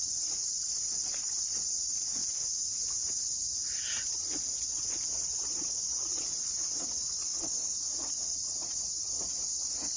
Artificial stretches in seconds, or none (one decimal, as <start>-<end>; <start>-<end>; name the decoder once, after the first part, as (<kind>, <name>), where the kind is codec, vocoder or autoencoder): 0.0-2.2 (vocoder, Vocos); 4.1-10.0